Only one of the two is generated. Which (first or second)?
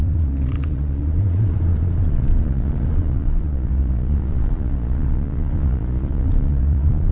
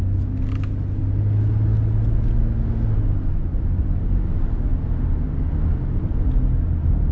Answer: first